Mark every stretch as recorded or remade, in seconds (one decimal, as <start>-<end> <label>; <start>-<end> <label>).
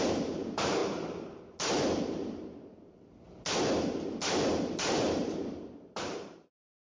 0.0-0.8 remade; 0.8-4.7 recorded; 4.7-6.9 remade